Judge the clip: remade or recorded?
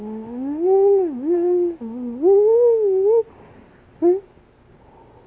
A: recorded